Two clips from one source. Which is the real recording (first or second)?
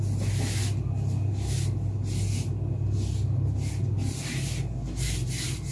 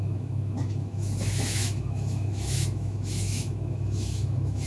first